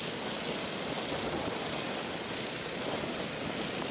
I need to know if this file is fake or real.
real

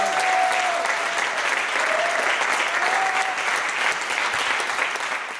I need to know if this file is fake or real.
real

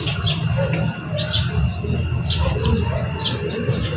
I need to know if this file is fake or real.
real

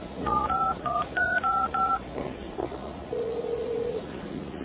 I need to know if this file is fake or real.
fake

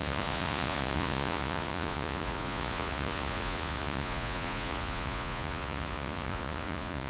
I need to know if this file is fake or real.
fake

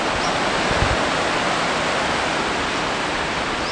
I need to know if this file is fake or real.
real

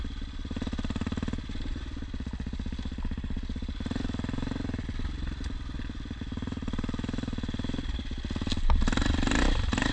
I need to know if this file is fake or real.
real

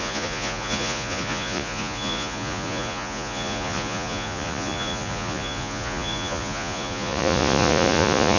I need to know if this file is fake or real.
fake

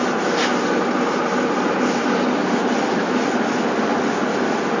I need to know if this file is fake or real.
real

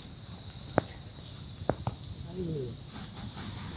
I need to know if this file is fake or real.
real